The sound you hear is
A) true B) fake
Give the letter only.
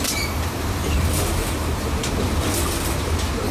A